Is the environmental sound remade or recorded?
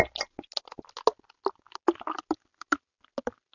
recorded